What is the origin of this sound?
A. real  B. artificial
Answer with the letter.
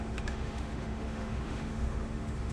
B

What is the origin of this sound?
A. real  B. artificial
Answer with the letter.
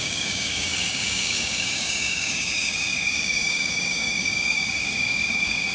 B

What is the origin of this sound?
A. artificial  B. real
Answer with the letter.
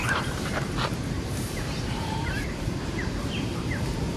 A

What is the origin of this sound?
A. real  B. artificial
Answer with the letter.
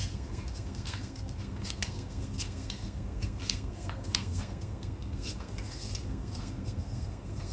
B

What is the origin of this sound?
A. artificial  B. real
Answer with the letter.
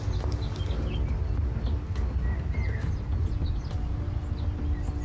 B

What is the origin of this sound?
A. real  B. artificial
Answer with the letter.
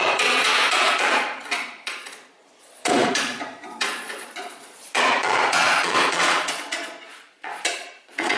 B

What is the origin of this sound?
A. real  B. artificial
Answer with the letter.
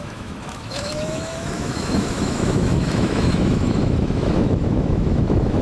B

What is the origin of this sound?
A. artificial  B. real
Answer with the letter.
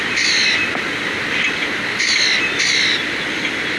B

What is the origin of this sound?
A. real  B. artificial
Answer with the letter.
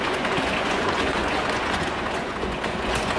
B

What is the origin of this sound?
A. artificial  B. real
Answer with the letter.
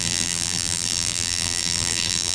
A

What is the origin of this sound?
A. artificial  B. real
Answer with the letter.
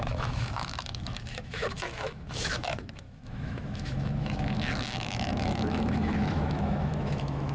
A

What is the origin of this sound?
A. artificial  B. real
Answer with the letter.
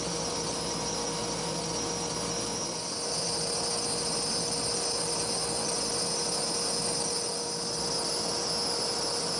B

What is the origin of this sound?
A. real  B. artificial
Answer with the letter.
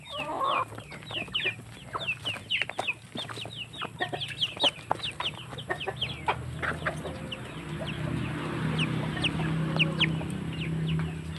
A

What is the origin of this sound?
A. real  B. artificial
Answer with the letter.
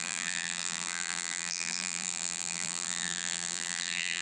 B